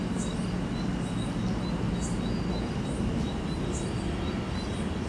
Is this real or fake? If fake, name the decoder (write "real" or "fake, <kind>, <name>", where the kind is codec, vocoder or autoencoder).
real